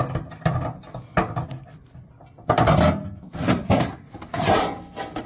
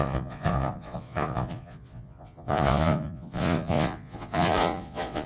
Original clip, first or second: first